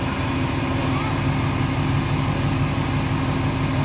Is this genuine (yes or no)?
yes